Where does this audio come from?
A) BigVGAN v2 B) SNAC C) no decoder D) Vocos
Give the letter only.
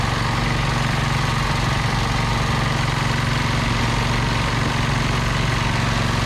C